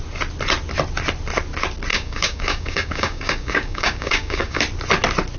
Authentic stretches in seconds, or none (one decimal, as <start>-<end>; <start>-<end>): 0.0-1.9; 4.6-5.4